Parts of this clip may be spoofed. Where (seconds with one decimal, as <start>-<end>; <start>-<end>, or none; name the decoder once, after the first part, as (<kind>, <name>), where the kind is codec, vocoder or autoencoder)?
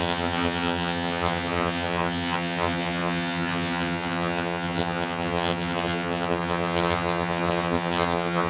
0.0-8.5 (vocoder, HiFi-GAN)